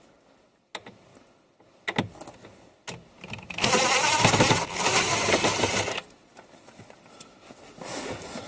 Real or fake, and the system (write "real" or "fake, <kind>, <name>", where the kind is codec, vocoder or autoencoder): real